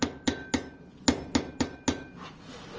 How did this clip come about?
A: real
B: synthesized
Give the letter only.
A